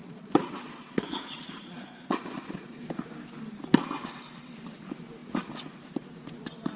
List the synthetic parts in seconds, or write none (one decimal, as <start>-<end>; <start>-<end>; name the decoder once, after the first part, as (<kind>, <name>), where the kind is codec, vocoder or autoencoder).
0.0-2.8 (vocoder, Vocos)